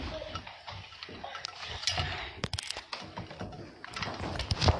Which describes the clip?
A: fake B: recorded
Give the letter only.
B